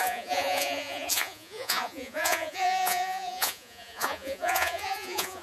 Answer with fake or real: fake